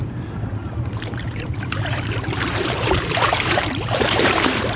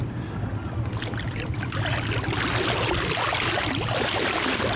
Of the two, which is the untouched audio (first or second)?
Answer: second